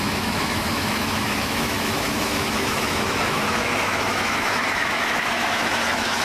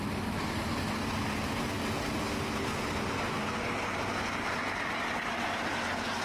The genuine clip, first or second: second